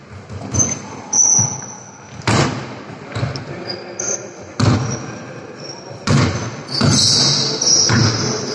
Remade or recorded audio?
recorded